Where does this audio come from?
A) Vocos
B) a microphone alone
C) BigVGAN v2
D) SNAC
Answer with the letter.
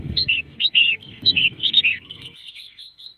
D